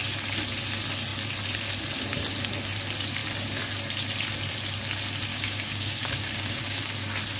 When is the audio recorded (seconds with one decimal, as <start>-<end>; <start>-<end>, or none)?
0.0-5.3; 6.8-7.4

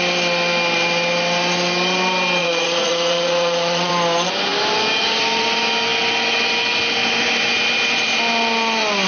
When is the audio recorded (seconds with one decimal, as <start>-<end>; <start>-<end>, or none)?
0.0-2.4; 3.9-9.1

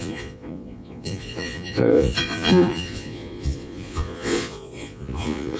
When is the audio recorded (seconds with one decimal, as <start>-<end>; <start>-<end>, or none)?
none

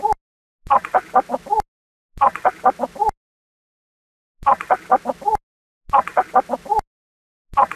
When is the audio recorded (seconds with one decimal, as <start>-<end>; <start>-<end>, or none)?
0.0-7.8

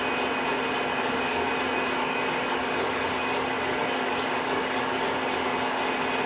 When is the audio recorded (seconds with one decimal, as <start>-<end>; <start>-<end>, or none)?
0.0-0.9; 1.5-2.0; 5.8-6.3